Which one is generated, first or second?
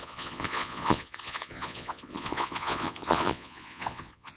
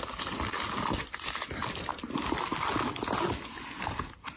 first